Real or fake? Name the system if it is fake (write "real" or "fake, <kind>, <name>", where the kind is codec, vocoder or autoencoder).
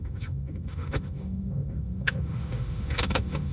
fake, autoencoder, DAC-VAE